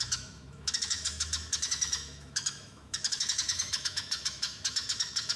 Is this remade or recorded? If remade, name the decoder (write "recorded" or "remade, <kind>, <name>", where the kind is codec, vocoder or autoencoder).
remade, autoencoder, DAC-VAE